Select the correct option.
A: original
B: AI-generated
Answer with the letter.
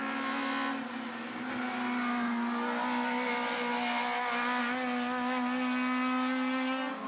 A